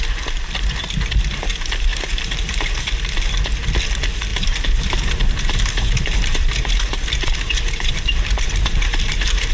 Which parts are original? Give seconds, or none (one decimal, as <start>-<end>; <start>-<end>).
0.0-1.9; 2.8-4.3